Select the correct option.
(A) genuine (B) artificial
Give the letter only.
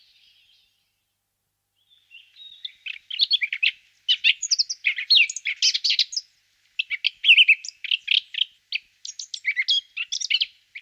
A